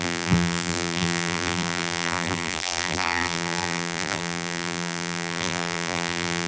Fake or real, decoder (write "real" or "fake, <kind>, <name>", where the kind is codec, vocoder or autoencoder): fake, vocoder, BigVGAN v2